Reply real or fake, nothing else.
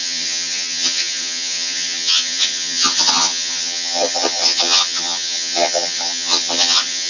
fake